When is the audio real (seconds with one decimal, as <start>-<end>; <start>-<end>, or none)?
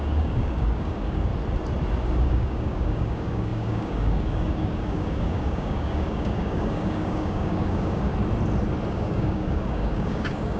1.3-2.2; 8.1-8.9